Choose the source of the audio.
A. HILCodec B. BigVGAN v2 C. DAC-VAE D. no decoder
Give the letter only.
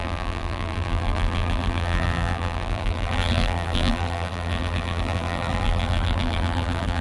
B